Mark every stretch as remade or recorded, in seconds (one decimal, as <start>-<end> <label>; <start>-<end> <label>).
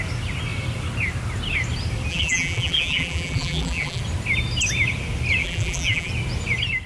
0.0-2.1 recorded; 2.1-4.0 remade; 4.0-5.4 recorded; 5.4-6.1 remade; 6.1-6.9 recorded